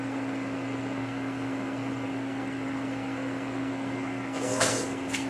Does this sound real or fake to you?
fake